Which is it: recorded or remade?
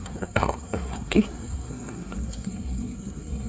remade